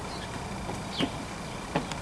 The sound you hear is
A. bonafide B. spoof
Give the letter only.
A